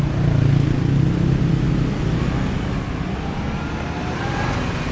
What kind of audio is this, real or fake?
real